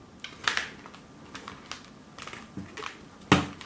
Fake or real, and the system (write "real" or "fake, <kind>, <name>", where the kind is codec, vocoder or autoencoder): real